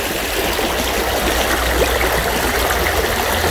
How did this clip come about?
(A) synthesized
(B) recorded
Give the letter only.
B